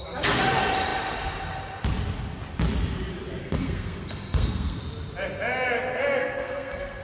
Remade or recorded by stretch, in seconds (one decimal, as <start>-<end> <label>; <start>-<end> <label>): 0.0-3.4 recorded; 3.4-4.8 remade; 4.8-6.2 recorded; 6.2-7.0 remade